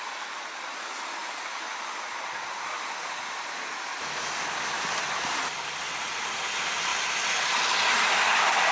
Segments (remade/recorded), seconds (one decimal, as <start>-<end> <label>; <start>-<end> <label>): 0.0-8.7 recorded